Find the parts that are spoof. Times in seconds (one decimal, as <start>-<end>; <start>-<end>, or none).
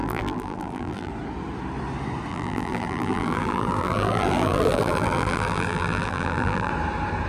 0.0-1.1; 2.3-6.7